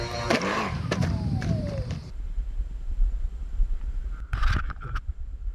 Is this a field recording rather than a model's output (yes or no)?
no